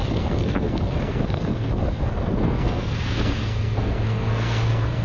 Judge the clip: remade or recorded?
remade